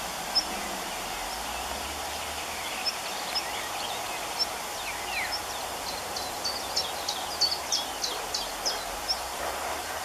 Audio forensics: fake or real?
real